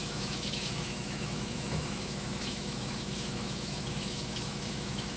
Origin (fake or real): fake